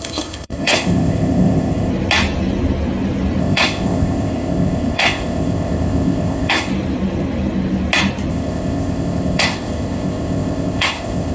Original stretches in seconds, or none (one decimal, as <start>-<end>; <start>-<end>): 1.9-3.4; 6.7-8.3